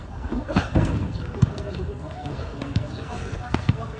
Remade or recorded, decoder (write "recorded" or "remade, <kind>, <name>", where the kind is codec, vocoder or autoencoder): remade, codec, SNAC